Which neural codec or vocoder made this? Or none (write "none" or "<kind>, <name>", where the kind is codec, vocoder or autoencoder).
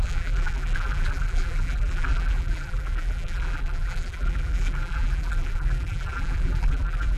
vocoder, BigVGAN v2